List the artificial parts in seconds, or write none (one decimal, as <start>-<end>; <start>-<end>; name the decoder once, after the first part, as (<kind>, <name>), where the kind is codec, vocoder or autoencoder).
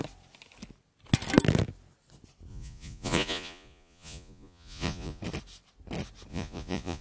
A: 2.5-5.2 (vocoder, Vocos); 6.3-7.0